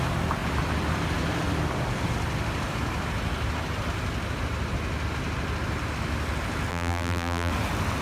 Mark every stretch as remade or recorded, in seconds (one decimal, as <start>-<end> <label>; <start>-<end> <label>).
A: 0.0-6.7 recorded; 6.7-7.5 remade; 7.5-8.0 recorded